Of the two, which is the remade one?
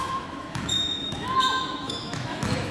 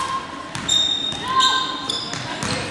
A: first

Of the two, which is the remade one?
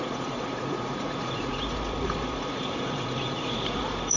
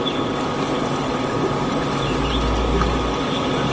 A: first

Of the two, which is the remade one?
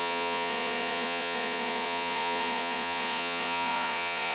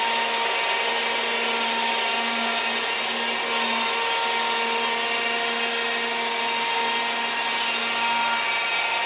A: first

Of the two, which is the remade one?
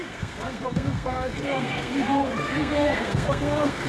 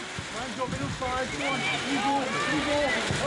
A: first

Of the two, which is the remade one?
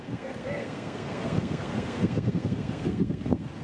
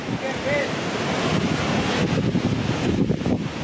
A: first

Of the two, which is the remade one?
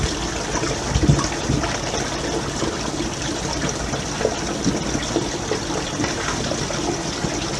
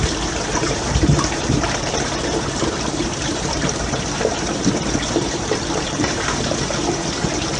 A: second